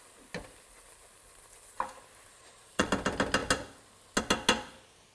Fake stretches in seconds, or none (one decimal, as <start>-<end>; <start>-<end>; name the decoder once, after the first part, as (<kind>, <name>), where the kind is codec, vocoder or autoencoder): 2.3-2.9 (vocoder, Vocos)